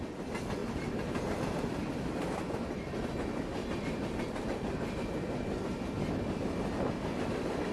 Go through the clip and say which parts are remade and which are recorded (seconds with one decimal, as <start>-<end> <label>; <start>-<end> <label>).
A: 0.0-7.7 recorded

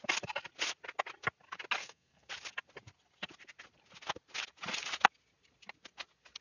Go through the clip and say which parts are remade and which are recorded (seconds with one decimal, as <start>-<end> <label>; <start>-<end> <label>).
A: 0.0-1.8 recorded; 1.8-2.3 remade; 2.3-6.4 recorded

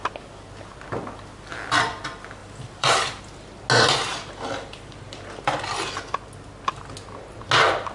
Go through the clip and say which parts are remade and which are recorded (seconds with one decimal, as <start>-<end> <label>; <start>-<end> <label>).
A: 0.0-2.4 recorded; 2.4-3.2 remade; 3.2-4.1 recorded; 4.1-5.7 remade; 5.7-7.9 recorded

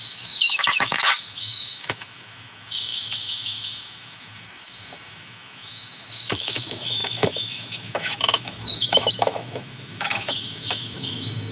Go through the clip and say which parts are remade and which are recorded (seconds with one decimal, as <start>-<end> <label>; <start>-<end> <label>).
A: 0.0-11.5 remade

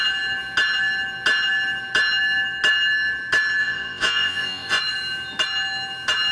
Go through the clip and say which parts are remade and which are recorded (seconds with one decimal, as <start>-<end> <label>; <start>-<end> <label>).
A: 0.0-3.6 recorded; 3.6-4.8 remade; 4.8-6.3 recorded

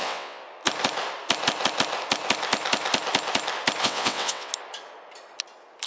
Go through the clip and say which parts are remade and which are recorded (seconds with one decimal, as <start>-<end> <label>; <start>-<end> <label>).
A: 0.0-0.4 remade; 0.4-3.8 recorded; 3.8-4.5 remade; 4.5-5.9 recorded

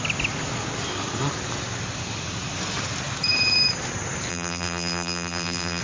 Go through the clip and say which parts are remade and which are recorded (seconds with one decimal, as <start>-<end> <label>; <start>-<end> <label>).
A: 0.0-4.3 recorded; 4.3-5.8 remade

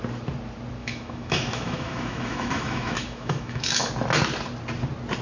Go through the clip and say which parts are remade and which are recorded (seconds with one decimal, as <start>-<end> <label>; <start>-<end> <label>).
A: 0.0-0.8 recorded; 0.8-3.9 remade; 3.9-5.2 recorded